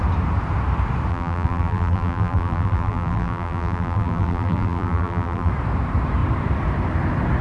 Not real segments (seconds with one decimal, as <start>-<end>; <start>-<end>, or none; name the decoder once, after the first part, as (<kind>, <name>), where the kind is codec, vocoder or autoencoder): 1.1-5.5 (vocoder, BigVGAN v2)